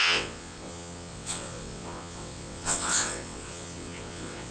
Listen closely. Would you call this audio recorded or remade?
remade